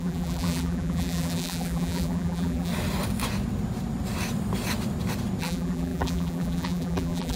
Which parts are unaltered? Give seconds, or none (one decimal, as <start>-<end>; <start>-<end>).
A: 2.7-5.4